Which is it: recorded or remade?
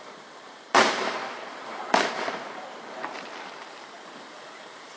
remade